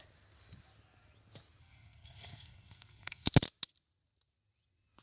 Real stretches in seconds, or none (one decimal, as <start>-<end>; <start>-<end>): 0.0-1.6; 3.3-5.0